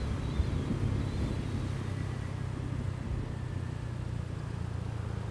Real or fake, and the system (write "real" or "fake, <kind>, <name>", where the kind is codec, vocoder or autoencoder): real